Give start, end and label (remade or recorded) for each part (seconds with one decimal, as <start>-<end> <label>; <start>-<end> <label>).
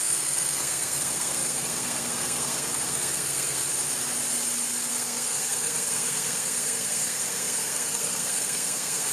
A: 0.0-3.6 remade; 3.6-4.9 recorded; 4.9-9.1 remade